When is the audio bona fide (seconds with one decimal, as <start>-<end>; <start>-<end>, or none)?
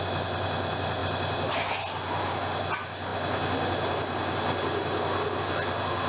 0.0-6.1